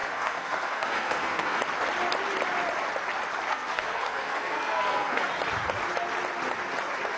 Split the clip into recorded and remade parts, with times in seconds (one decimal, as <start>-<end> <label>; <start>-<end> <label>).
0.0-1.6 remade; 1.6-3.5 recorded; 3.5-5.3 remade; 5.3-7.2 recorded